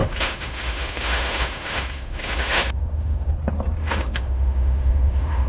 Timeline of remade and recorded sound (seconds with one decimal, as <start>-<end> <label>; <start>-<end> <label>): 0.0-3.3 remade; 3.3-3.8 recorded; 3.8-5.5 remade